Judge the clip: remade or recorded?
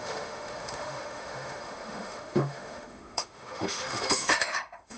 remade